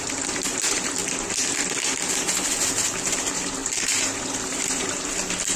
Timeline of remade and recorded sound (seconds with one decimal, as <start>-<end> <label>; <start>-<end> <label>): 0.0-1.0 remade; 1.0-3.0 recorded; 3.0-5.6 remade